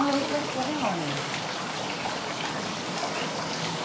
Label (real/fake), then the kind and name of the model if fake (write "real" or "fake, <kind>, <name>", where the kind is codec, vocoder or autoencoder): fake, codec, DAC